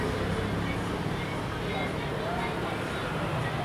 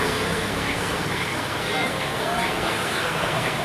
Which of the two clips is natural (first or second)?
first